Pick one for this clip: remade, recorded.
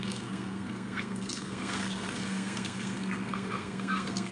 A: remade